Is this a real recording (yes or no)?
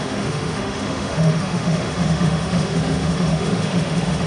no